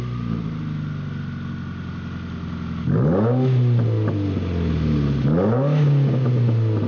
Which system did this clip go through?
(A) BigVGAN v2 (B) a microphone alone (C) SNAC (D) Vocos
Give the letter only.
B